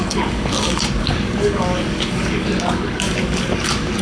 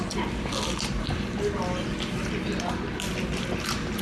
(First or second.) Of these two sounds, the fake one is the first